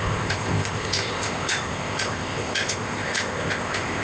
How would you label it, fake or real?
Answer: fake